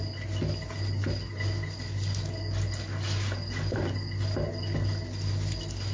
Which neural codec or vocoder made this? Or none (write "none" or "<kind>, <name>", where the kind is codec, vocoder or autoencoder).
none